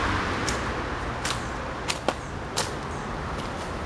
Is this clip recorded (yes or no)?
yes